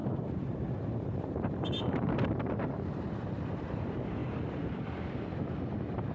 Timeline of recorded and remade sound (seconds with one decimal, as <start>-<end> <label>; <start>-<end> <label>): 0.0-3.5 remade; 3.5-4.2 recorded; 4.2-4.7 remade; 4.7-6.1 recorded